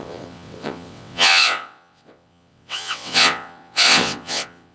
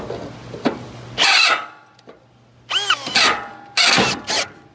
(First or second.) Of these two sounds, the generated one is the first